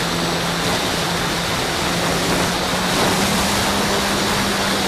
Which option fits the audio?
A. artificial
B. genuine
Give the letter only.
B